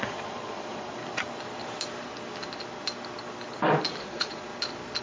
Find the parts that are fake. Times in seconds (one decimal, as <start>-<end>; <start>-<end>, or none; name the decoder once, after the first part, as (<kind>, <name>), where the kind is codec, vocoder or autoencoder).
0.0-1.0 (vocoder, Vocos); 4.0-4.5